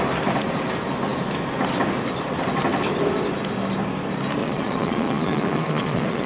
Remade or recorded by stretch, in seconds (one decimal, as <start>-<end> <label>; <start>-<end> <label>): 0.0-4.4 recorded; 4.4-6.3 remade